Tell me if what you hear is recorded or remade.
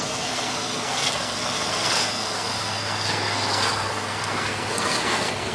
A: remade